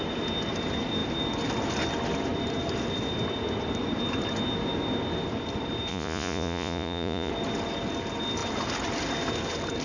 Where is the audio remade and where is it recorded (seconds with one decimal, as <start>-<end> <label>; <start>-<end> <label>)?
0.0-5.9 recorded; 5.9-7.3 remade; 7.3-9.8 recorded